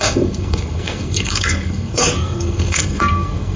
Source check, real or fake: fake